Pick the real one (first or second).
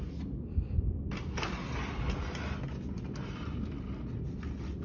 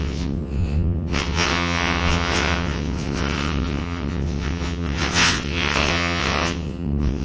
first